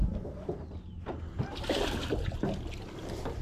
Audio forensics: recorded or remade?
recorded